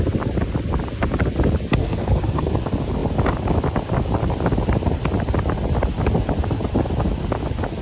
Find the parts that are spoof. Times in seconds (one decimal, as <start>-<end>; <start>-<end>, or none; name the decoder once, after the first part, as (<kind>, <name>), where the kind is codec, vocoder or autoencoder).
1.8-2.5 (codec, SNAC)